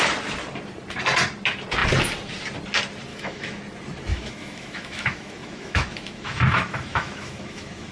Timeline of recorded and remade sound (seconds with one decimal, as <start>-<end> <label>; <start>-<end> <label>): 0.0-3.1 recorded; 3.1-3.6 remade; 3.6-4.1 recorded; 4.1-7.9 remade